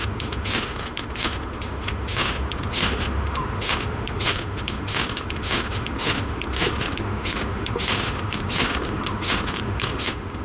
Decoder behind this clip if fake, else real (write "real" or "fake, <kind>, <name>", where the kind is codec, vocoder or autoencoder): fake, autoencoder, DAC-VAE